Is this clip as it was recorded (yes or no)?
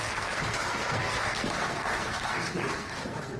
no